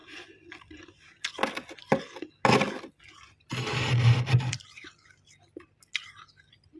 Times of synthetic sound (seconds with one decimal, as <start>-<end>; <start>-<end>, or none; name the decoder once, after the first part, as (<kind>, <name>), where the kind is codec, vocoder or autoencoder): none